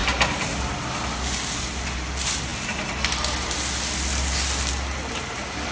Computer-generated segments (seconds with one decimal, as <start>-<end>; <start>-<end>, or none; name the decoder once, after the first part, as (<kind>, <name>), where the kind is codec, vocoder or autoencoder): none